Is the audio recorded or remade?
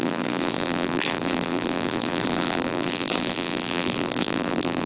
remade